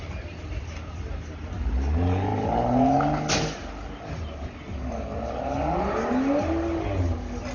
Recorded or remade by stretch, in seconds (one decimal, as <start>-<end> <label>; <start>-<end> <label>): 0.0-7.5 recorded